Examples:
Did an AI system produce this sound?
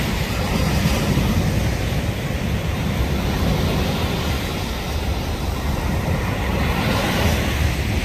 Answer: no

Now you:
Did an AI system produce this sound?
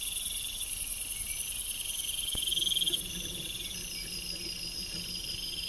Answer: no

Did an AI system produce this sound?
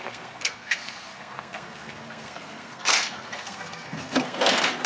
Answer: yes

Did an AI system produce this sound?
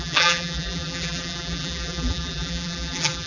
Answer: yes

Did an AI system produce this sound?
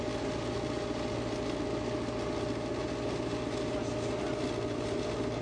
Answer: no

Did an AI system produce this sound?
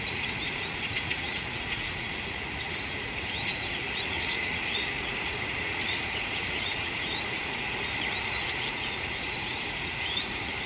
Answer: yes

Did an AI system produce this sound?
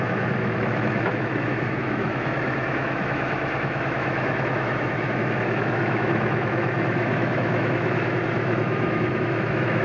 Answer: yes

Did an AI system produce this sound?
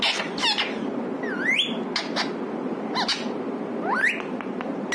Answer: no